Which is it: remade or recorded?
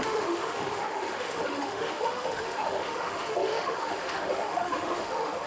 remade